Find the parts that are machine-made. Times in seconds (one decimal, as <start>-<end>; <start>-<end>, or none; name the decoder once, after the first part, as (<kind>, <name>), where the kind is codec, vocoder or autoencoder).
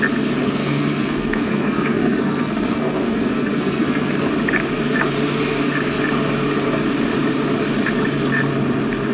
0.4-4.3 (codec, SNAC)